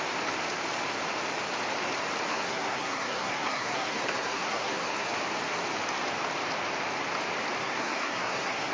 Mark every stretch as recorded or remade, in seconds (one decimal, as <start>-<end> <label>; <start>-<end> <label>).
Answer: 0.0-2.3 recorded; 2.3-5.1 remade; 5.1-7.6 recorded; 7.6-8.7 remade